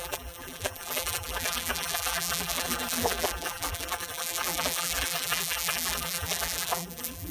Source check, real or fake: fake